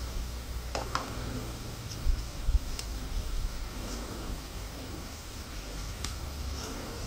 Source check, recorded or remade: remade